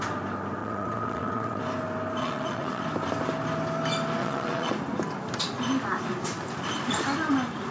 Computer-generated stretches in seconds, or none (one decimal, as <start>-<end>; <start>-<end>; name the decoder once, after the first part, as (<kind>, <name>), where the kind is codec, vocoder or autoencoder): 0.6-1.6 (vocoder, WaveNeXt); 2.2-2.8; 4.2-4.7